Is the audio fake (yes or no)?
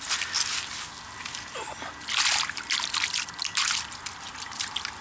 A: no